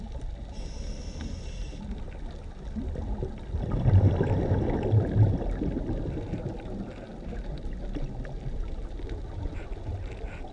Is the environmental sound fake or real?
real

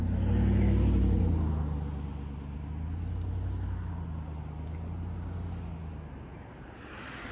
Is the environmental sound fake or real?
real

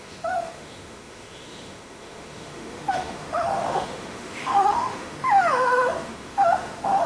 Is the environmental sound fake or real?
fake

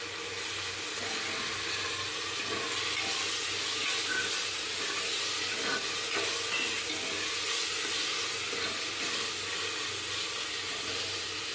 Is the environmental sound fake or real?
real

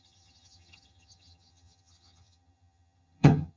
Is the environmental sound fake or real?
fake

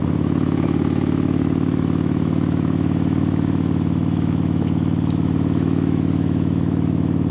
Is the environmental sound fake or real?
fake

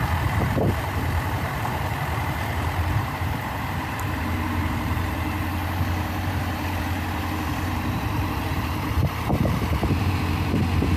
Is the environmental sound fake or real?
fake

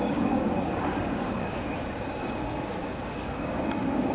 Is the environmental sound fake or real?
fake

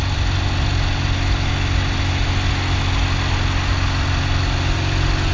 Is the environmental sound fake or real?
real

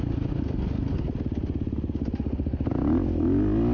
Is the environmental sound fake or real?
real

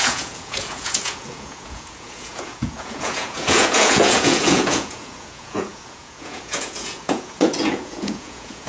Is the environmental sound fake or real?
fake